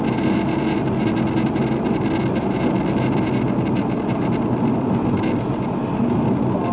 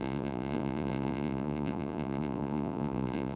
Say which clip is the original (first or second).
first